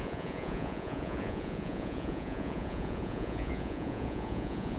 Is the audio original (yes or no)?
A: no